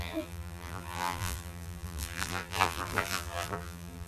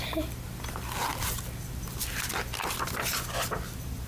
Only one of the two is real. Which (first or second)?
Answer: second